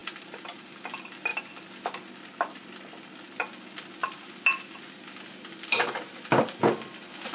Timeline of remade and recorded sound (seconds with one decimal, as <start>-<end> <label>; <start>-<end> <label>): 0.0-7.3 recorded